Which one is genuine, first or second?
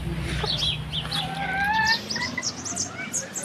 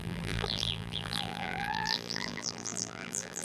first